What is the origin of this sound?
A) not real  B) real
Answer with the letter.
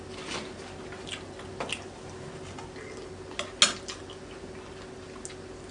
B